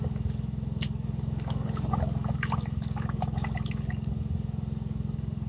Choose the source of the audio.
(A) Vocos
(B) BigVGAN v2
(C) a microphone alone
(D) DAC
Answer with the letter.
D